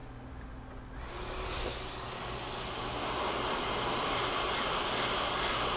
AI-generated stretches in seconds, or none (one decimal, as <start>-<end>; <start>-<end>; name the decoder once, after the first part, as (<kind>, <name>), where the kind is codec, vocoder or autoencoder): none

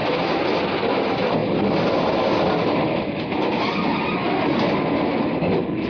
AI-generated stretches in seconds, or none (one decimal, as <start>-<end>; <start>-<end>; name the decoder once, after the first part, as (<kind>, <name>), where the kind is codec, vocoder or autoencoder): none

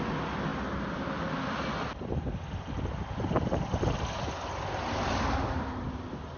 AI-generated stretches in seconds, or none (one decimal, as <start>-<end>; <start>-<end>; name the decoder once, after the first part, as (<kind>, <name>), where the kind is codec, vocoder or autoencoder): none